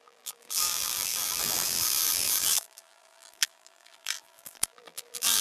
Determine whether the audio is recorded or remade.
remade